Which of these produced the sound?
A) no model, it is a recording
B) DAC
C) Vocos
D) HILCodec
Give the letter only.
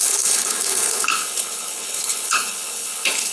D